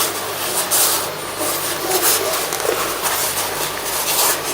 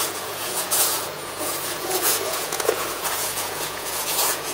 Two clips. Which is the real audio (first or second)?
first